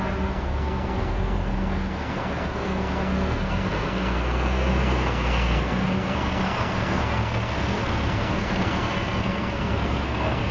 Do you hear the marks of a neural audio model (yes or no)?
yes